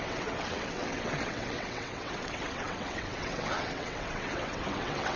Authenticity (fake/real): fake